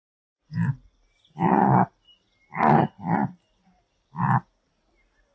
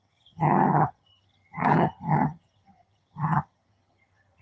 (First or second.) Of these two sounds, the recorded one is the first